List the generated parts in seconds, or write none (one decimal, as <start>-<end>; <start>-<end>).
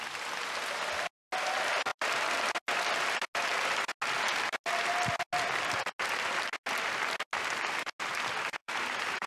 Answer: 8.6-9.3